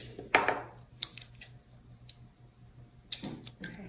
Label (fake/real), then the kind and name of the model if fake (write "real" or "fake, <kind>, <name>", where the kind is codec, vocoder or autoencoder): real